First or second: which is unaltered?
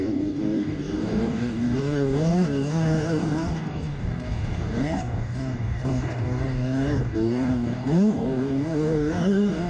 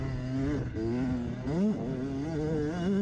second